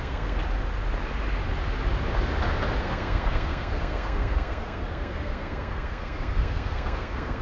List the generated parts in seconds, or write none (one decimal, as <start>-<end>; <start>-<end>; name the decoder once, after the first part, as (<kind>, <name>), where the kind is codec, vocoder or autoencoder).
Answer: 0.0-0.4 (codec, SNAC); 2.8-7.4